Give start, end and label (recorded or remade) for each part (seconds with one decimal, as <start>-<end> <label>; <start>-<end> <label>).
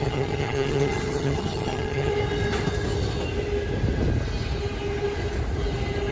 0.0-2.1 remade; 2.1-6.1 recorded